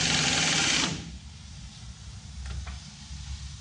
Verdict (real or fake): real